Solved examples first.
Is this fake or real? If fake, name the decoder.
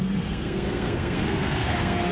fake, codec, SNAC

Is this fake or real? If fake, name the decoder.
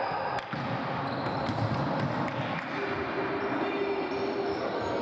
real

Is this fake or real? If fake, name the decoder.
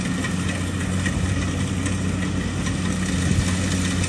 real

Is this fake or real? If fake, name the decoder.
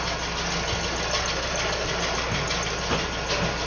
real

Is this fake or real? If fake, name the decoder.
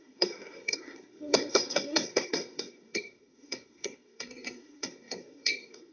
fake, codec, SNAC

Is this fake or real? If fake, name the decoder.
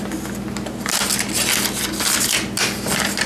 real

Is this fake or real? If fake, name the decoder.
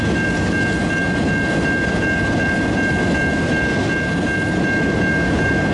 real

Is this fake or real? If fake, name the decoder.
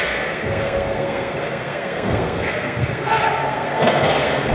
fake, codec, SNAC